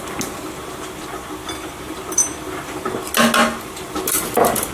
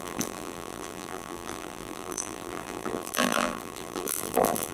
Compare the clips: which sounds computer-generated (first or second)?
second